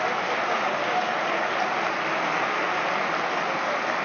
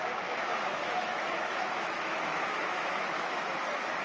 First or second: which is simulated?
second